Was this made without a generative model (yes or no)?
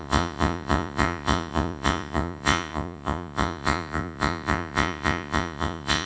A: no